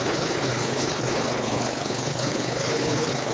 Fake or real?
fake